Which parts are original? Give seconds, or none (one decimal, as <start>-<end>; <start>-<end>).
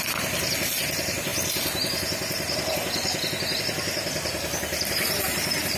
0.0-5.8